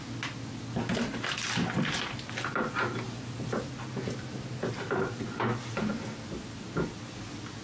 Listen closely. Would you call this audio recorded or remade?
recorded